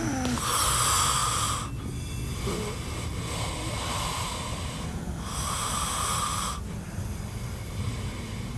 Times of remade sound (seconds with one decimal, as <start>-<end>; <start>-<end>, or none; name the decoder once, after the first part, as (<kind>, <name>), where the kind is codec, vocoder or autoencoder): none